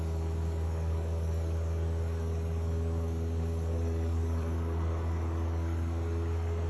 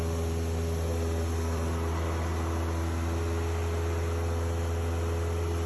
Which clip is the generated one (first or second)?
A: first